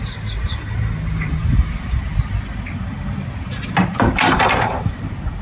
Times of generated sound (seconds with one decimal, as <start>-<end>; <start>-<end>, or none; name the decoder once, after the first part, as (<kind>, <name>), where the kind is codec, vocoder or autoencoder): 0.5-2.0 (vocoder, BigVGAN v2); 4.2-5.0